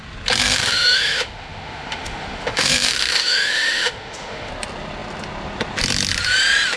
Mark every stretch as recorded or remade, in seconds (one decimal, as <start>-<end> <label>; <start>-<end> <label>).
0.0-0.4 recorded; 0.4-4.5 remade; 4.5-6.8 recorded